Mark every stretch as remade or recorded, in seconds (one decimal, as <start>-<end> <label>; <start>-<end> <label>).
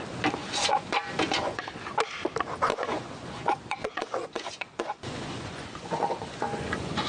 0.0-0.4 recorded; 0.4-1.6 remade; 1.6-2.7 recorded; 2.7-7.1 remade